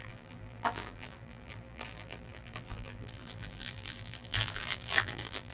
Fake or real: fake